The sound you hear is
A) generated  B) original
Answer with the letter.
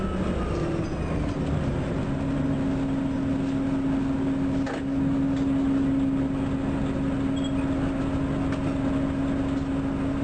B